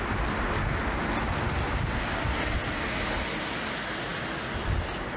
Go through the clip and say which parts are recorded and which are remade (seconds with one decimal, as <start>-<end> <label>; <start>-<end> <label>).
0.0-5.2 recorded